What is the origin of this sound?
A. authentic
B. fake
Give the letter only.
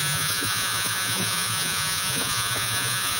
B